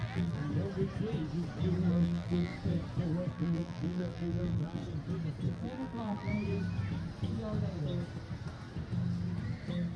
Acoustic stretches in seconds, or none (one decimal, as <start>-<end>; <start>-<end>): 0.4-1.9; 2.5-3.3; 4.8-5.5; 6.3-10.0